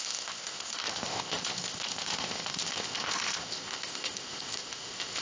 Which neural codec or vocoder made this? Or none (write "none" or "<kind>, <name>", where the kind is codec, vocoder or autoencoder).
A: codec, ZipCodec